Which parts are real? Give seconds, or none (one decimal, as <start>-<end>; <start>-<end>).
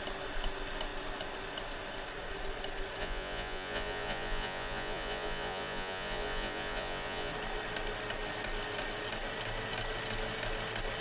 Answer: 0.0-3.0; 7.3-11.0